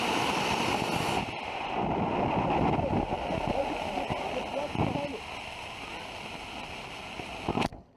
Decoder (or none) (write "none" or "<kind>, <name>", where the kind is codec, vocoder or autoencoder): none